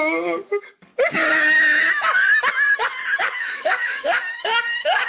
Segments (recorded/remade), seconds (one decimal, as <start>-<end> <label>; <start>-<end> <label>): 0.0-0.9 remade; 0.9-3.2 recorded; 3.2-5.1 remade